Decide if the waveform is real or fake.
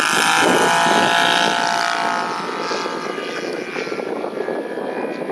real